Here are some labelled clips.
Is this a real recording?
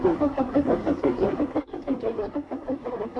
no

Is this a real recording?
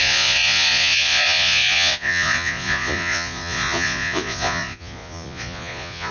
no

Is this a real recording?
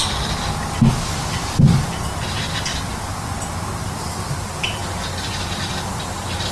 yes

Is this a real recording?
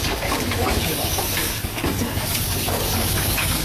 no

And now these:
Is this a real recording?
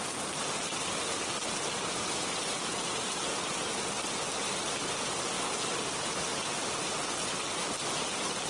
yes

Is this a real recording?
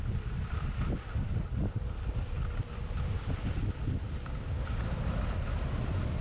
yes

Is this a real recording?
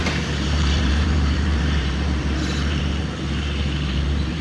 no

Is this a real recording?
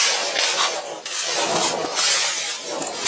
yes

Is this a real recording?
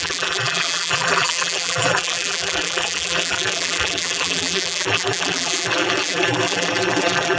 no